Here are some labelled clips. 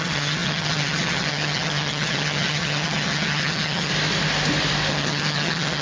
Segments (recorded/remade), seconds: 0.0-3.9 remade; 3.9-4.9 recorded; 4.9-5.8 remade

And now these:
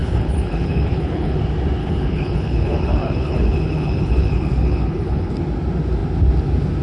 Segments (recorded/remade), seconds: 0.0-1.4 remade; 1.4-1.8 recorded; 1.8-5.3 remade; 5.3-6.8 recorded